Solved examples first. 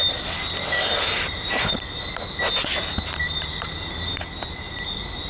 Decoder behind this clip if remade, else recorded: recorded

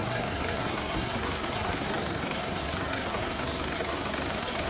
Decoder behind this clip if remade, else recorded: remade, codec, SNAC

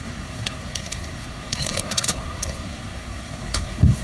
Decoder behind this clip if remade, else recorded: remade, codec, SNAC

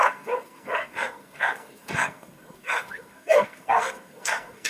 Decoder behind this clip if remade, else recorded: remade, codec, SNAC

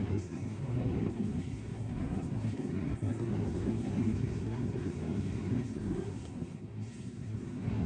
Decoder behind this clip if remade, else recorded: remade, codec, SNAC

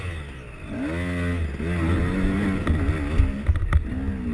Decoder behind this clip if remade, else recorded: recorded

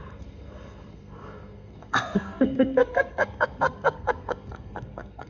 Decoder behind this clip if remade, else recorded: remade, codec, SNAC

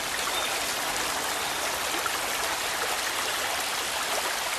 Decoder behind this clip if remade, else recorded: recorded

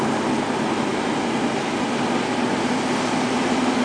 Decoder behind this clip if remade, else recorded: recorded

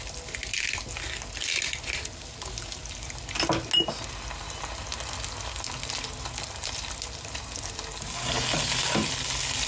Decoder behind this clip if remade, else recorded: recorded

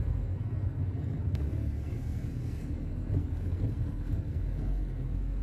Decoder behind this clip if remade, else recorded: remade, codec, SNAC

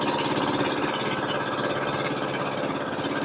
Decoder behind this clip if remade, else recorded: recorded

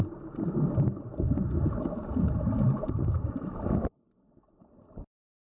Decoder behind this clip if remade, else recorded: recorded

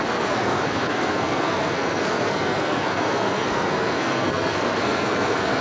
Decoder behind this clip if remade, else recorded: remade, codec, SNAC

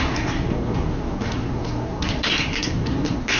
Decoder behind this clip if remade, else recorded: remade, codec, SNAC